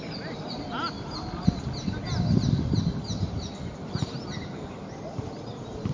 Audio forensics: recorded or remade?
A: recorded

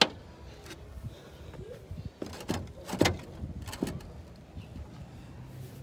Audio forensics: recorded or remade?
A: recorded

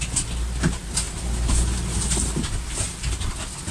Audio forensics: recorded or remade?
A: recorded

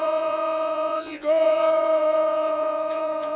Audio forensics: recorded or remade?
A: remade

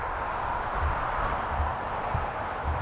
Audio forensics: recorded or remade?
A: recorded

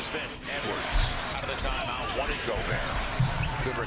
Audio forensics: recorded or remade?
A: remade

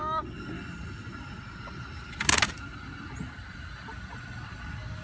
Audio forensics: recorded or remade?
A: recorded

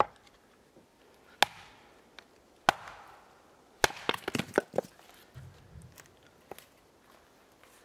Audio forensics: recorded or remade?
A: recorded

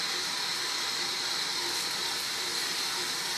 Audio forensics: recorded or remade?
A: remade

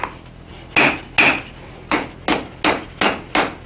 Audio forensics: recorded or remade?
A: recorded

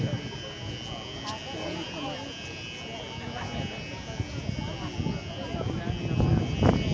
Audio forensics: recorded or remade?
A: recorded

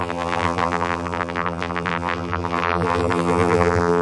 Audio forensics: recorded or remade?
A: remade